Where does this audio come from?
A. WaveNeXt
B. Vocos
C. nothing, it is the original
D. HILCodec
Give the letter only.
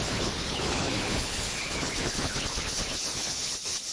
D